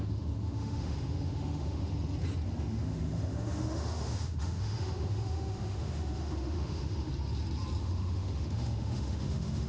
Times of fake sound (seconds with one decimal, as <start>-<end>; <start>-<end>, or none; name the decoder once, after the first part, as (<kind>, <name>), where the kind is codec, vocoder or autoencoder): 0.0-1.9 (autoencoder, DAC-VAE); 2.6-7.1; 7.8-9.7